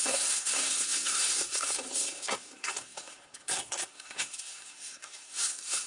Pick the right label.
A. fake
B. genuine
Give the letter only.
A